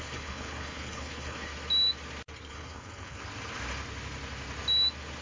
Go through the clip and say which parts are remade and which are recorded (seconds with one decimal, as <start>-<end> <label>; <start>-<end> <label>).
0.0-1.5 remade; 1.5-2.5 recorded; 2.5-3.2 remade; 3.2-5.2 recorded